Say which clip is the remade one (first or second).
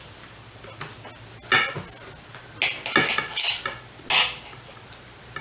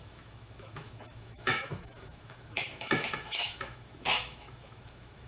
second